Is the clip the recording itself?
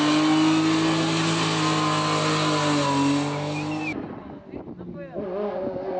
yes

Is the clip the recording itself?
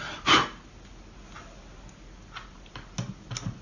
yes